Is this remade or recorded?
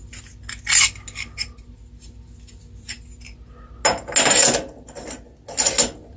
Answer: recorded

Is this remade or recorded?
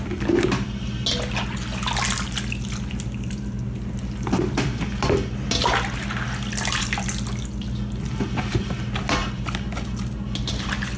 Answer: recorded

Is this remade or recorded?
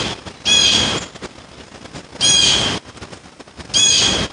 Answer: recorded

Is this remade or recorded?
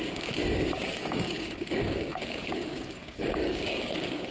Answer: remade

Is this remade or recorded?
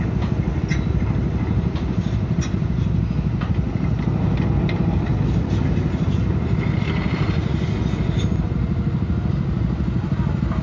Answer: recorded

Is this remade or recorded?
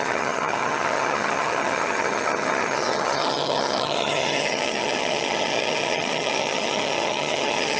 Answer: remade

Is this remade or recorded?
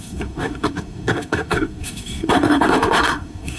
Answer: remade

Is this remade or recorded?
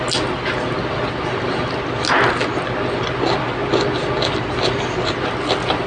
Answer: recorded